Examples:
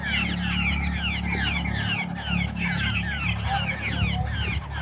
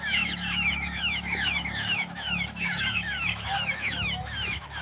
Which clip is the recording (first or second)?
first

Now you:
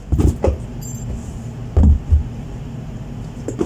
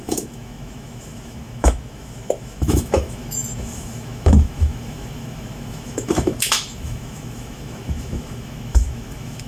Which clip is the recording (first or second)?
first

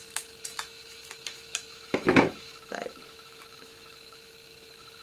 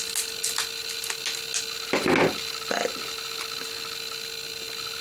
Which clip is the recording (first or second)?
second